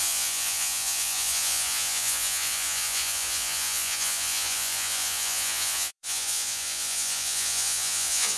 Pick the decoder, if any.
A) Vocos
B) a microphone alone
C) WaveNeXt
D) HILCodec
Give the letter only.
A